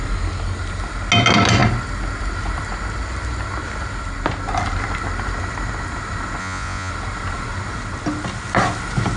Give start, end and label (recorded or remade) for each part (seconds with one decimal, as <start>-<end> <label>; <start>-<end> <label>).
0.0-6.4 recorded; 6.4-6.9 remade; 6.9-9.2 recorded